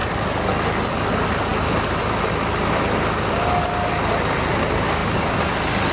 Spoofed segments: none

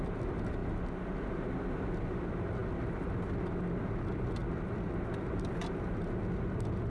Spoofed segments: none

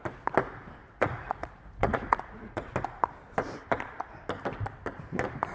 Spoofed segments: 0.8-2.7

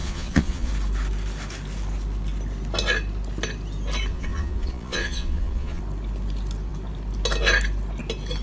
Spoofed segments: 0.0-0.7; 4.1-5.8

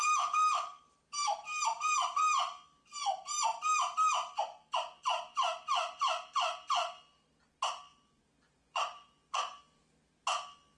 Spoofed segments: 7.9-9.6

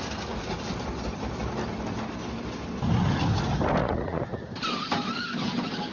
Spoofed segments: 3.8-4.5